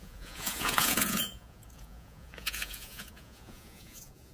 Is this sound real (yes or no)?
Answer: no